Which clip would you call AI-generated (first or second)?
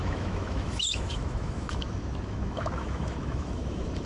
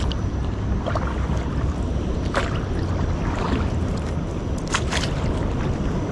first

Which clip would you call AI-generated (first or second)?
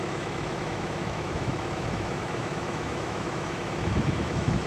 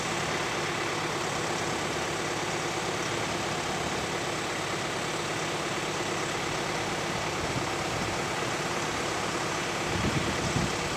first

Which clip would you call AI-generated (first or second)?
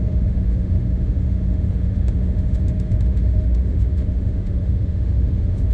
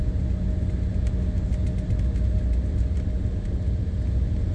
first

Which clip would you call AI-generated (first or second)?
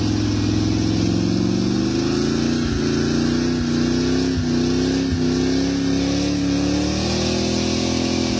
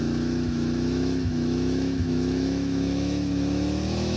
second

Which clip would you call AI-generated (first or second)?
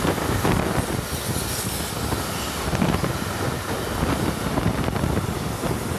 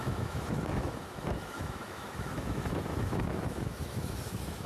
second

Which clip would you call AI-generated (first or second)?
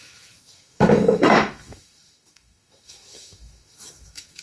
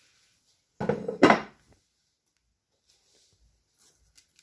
first